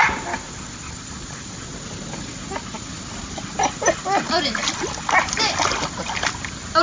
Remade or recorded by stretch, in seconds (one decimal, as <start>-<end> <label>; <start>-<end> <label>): 0.0-6.8 recorded